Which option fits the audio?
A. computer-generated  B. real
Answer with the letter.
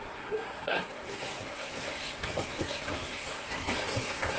A